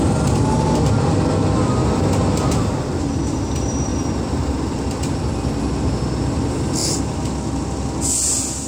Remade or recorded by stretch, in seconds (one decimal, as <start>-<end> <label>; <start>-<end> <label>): 0.0-8.7 recorded